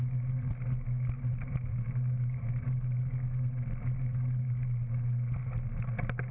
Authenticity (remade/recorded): recorded